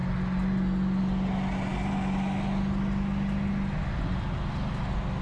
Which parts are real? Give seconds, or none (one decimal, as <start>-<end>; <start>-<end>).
0.0-5.2